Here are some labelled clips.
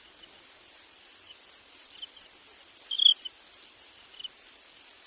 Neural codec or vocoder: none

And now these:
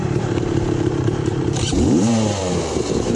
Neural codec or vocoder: vocoder, BigVGAN v2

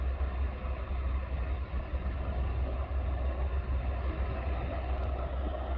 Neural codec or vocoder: none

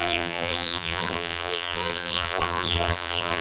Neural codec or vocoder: vocoder, BigVGAN v2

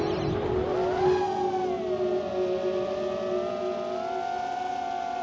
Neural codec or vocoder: none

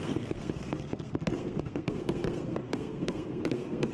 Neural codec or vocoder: codec, SNAC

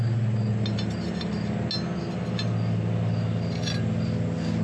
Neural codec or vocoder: none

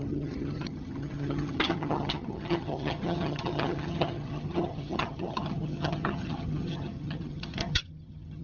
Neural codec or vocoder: vocoder, HiFi-GAN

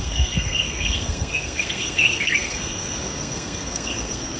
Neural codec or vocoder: codec, SNAC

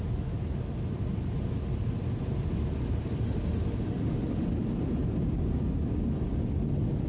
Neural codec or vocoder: none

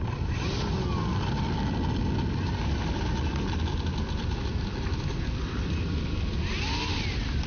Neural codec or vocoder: none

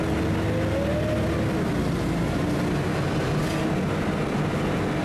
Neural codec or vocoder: none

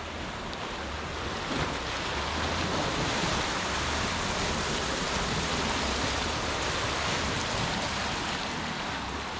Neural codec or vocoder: none